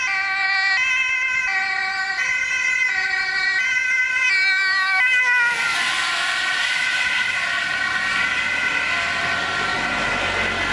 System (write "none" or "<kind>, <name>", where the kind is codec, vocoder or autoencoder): none